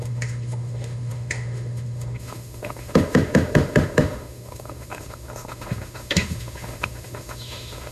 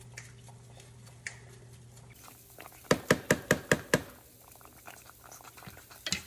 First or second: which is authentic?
second